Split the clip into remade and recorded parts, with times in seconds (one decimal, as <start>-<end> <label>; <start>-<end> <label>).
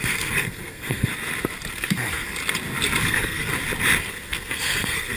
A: 0.0-1.1 remade; 1.1-1.7 recorded; 1.7-2.4 remade; 2.4-3.0 recorded; 3.0-3.5 remade; 3.5-4.1 recorded; 4.1-5.2 remade